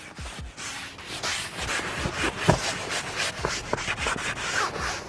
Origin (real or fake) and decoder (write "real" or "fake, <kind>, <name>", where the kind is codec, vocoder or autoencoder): real